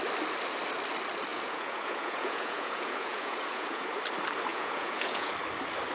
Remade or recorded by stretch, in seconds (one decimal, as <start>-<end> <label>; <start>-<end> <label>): 0.0-1.3 recorded; 1.3-3.8 remade; 3.8-4.5 recorded; 4.5-5.3 remade; 5.3-5.9 recorded